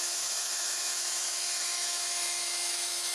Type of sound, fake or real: fake